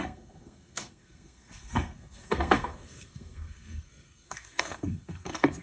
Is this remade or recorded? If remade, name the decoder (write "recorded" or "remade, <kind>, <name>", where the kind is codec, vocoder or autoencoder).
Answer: remade, codec, SNAC